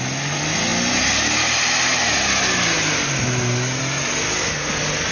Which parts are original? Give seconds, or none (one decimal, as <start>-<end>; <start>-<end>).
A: 0.0-5.1